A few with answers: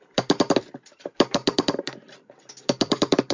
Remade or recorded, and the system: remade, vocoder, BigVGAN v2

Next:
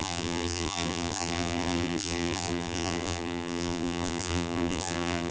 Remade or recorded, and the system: remade, vocoder, BigVGAN v2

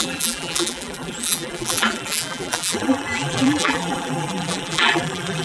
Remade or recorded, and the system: remade, vocoder, BigVGAN v2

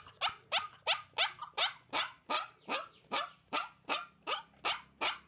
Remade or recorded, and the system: recorded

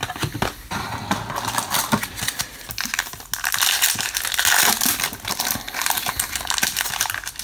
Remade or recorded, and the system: recorded